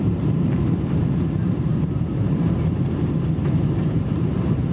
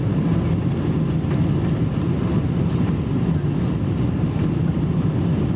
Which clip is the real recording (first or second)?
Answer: second